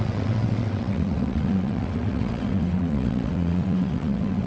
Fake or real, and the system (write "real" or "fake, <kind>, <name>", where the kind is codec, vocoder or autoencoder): fake, vocoder, WaveNeXt